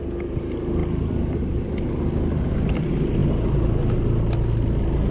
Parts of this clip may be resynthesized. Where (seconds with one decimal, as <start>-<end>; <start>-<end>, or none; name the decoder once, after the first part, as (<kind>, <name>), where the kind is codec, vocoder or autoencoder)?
none